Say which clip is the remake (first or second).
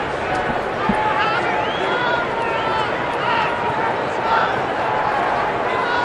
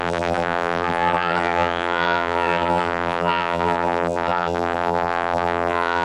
second